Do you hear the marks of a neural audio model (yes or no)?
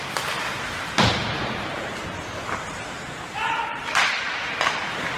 yes